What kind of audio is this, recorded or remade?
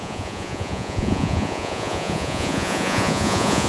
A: remade